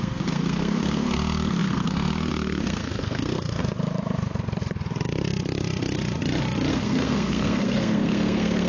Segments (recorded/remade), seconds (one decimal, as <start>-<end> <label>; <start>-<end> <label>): 0.0-3.6 remade; 3.6-6.7 recorded; 6.7-8.7 remade